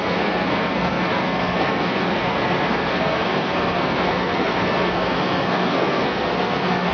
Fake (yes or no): yes